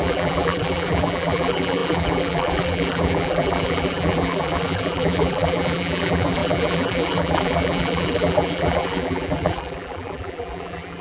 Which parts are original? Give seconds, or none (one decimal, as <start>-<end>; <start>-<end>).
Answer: none